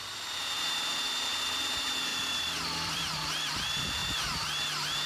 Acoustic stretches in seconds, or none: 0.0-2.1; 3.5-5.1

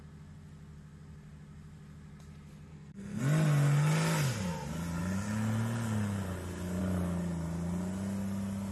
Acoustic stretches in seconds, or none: 0.0-2.7; 3.2-8.7

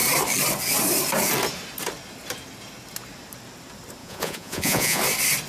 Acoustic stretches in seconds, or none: 0.0-4.0; 5.0-5.5